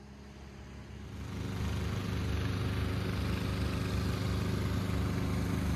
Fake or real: real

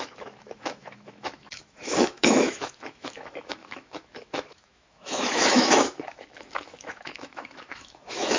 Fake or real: fake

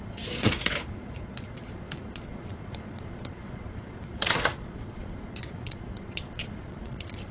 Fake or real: fake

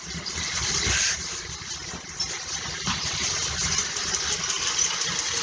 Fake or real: fake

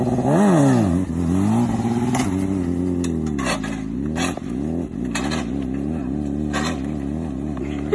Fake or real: real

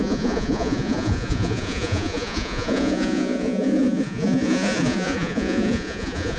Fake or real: fake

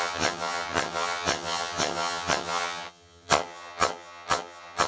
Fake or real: fake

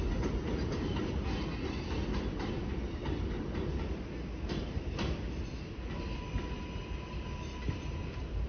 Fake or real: real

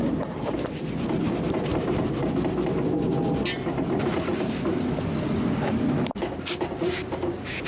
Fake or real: real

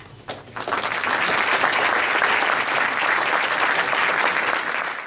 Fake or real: real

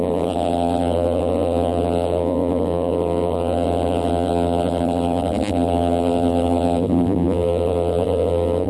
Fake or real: fake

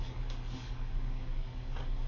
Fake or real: fake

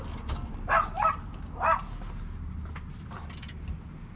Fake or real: real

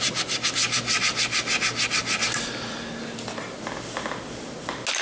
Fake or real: real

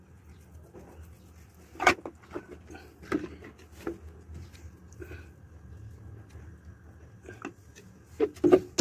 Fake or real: real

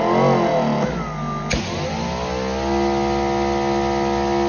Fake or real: real